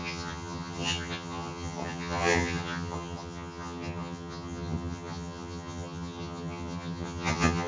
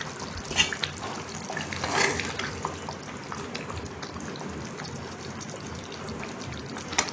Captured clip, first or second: second